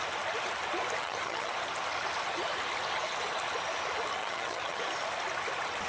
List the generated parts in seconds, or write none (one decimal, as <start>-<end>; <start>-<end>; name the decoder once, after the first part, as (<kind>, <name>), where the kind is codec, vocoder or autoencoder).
1.0-1.5 (vocoder, HiFi-GAN); 4.2-4.8